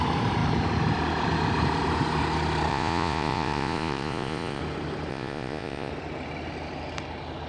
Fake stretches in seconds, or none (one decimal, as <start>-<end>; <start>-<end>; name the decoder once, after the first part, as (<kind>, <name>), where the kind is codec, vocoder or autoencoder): 2.7-4.6 (vocoder, Vocos); 5.1-5.9